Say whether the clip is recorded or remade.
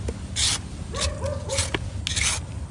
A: recorded